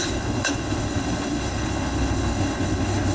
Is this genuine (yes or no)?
no